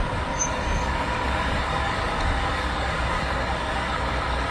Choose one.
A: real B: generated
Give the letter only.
B